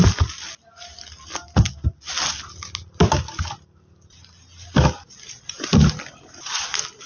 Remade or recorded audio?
recorded